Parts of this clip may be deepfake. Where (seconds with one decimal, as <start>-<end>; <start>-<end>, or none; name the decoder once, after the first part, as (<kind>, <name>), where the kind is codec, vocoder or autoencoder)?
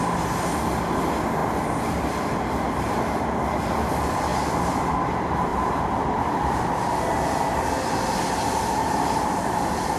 1.4-3.4 (vocoder, BigVGAN v2); 5.5-6.6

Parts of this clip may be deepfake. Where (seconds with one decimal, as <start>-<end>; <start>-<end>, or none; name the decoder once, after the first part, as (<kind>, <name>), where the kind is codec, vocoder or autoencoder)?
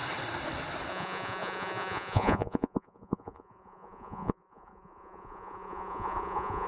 0.9-6.7 (vocoder, Vocos)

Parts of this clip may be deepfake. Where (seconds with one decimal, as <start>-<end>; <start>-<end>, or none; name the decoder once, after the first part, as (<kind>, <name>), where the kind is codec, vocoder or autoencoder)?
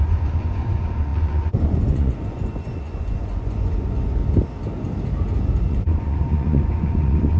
0.0-4.2 (vocoder, Vocos); 5.6-7.4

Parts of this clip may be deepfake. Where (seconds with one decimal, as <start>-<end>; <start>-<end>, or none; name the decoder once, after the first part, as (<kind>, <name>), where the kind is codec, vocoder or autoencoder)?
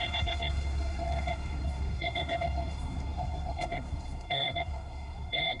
0.0-5.6 (codec, SNAC)